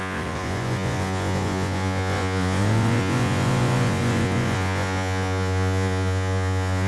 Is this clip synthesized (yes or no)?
yes